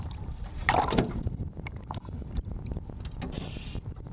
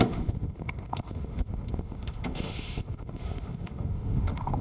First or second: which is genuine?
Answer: first